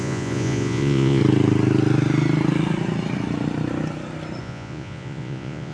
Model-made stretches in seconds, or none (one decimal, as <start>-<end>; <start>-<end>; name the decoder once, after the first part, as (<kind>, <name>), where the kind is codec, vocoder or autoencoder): 0.0-1.2 (vocoder, Vocos); 4.4-5.7